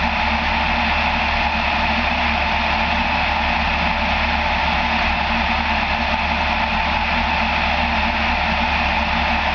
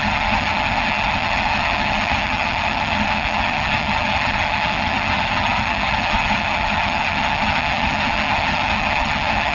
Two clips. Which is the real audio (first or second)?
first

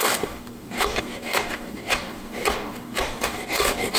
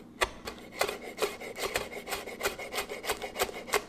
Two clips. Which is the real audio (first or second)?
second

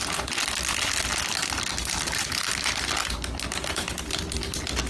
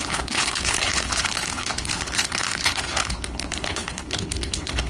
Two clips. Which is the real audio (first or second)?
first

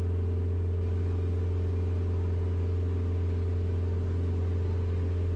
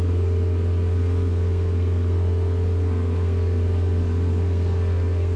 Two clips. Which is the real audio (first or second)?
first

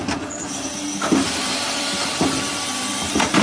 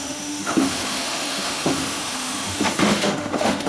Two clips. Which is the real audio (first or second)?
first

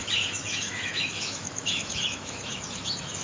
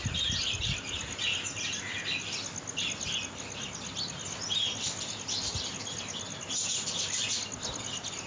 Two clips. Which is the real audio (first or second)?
second